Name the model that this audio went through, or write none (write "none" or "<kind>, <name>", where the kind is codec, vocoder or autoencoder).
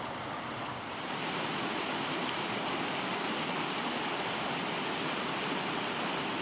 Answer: none